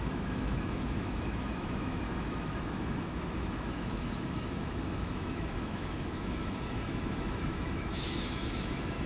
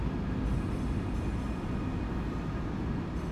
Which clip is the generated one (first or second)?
first